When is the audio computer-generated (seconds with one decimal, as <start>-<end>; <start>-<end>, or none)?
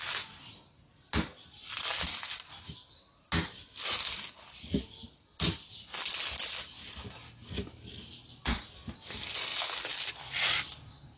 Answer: none